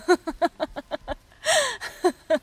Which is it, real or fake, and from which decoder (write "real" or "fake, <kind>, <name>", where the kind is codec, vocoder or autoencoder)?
real